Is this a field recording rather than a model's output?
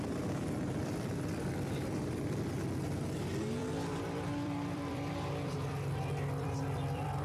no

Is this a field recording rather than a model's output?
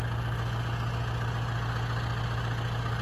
yes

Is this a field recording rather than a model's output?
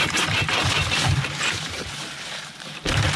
no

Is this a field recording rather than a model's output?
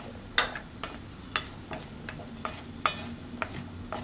yes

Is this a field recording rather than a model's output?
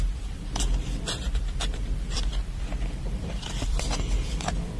no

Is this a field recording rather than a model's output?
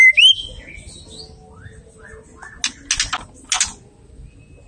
yes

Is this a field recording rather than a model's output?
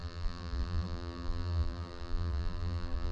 no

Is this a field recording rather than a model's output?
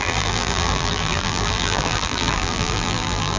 no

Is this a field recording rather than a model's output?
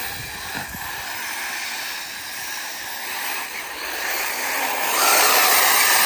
yes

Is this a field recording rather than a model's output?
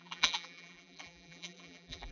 no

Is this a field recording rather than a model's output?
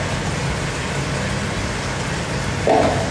yes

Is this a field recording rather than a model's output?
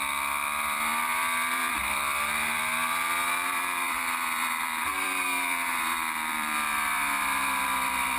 no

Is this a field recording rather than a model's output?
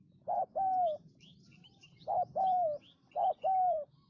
no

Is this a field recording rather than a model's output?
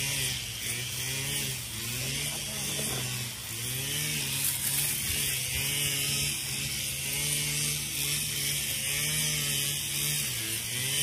yes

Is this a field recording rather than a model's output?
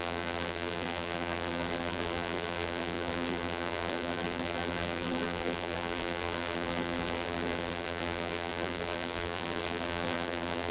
no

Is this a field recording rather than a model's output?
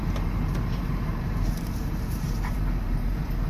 no